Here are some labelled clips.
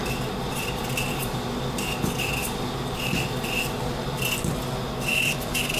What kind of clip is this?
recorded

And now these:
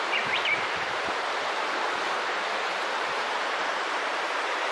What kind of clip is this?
remade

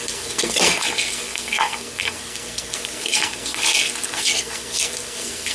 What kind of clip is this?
remade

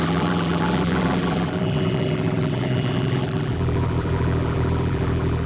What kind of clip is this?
remade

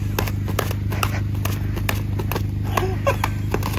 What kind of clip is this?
recorded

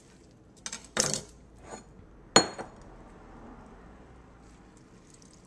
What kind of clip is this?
recorded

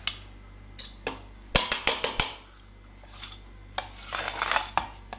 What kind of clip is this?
recorded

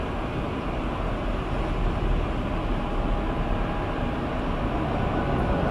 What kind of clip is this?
recorded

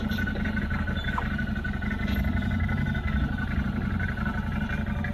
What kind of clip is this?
recorded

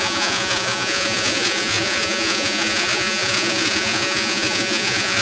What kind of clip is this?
remade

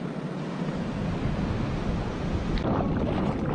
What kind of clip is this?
recorded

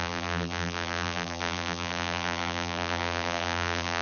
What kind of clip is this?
remade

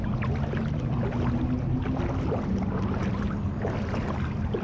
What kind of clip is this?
recorded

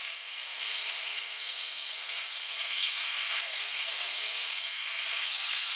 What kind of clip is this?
remade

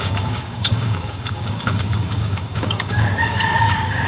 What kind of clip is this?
remade